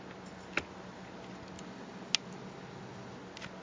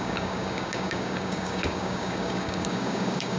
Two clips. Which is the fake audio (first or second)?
second